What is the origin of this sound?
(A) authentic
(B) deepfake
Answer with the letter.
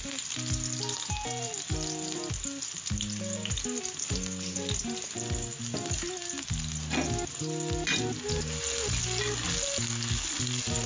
A